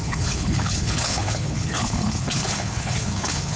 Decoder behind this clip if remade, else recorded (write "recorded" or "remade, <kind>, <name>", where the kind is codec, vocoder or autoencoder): remade, codec, HILCodec